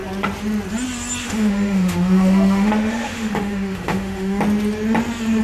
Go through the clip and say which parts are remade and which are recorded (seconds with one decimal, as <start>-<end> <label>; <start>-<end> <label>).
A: 0.0-1.2 recorded; 1.2-4.4 remade; 4.4-5.4 recorded